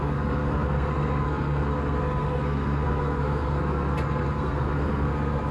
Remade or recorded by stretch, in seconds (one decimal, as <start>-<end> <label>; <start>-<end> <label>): 0.0-5.5 remade